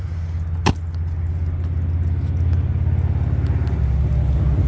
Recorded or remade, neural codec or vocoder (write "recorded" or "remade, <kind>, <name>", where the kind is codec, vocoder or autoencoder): recorded